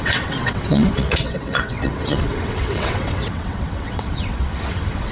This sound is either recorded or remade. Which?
remade